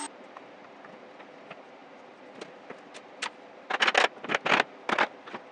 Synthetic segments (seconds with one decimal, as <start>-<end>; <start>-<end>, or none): none